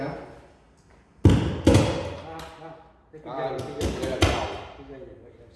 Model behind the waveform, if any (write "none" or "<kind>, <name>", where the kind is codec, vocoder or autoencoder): none